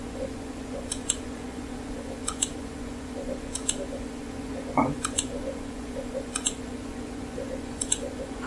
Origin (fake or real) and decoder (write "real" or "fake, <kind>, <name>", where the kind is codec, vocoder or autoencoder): fake, vocoder, Vocos